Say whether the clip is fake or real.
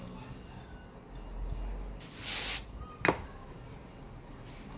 real